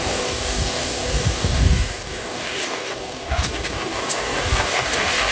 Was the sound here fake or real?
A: fake